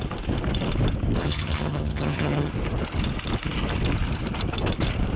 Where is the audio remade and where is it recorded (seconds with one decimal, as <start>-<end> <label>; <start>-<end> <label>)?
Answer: 0.0-1.2 recorded; 1.2-2.5 remade; 2.5-5.2 recorded